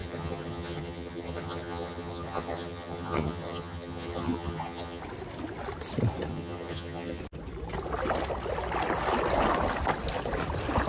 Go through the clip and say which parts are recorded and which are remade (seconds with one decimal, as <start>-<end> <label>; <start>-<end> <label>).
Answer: 0.0-5.0 remade; 5.0-6.3 recorded; 6.3-7.2 remade; 7.2-10.9 recorded